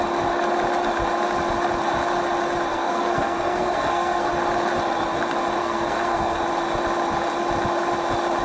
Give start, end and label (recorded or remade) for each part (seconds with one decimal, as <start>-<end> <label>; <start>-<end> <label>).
0.0-2.7 recorded; 2.7-4.3 remade; 4.3-5.6 recorded; 5.6-6.4 remade; 6.4-8.4 recorded